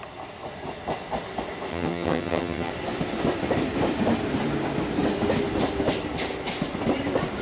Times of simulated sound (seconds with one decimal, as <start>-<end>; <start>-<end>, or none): 1.7-2.7